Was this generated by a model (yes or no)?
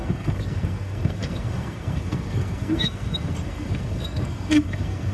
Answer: yes